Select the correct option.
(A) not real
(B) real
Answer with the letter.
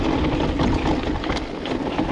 B